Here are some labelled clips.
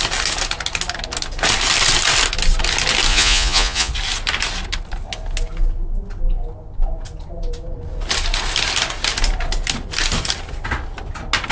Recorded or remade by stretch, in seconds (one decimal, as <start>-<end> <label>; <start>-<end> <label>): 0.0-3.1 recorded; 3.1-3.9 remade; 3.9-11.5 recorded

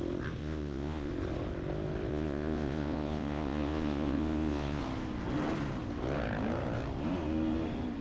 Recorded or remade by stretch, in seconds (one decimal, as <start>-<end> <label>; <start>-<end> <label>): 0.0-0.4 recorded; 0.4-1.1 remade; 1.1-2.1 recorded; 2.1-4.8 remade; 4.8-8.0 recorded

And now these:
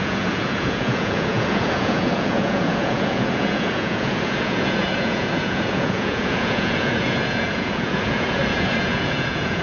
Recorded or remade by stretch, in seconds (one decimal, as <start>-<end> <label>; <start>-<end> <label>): 0.0-9.6 remade